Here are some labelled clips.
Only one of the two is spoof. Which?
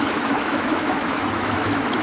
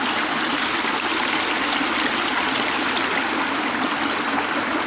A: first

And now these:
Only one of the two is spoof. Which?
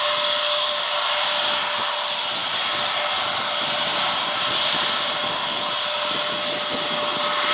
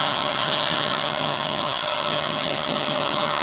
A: second